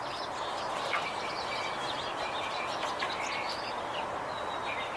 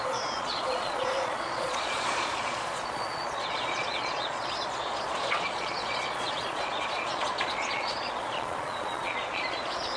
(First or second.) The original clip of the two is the first